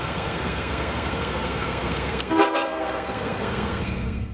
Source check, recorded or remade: remade